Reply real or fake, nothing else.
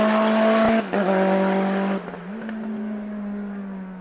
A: real